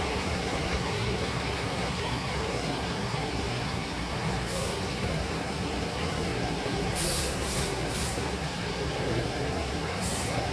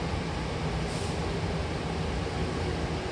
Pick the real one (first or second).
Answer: second